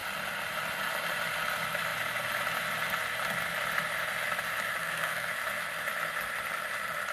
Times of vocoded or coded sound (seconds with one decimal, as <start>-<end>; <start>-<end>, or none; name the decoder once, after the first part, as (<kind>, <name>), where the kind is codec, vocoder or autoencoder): 4.8-5.3 (codec, SNAC)